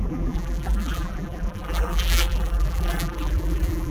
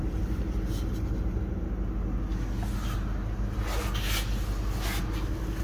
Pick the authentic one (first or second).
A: second